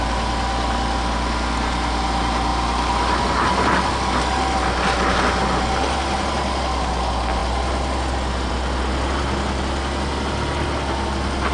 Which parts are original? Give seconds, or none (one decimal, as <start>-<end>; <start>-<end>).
0.0-11.5